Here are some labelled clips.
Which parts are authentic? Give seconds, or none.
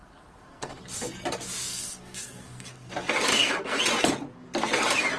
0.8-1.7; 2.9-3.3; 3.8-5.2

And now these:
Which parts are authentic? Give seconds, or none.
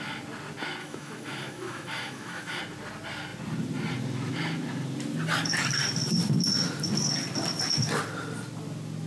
0.0-0.8; 2.6-9.1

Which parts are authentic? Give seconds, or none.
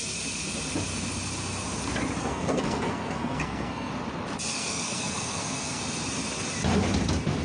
0.0-2.2; 3.9-4.5; 5.8-7.4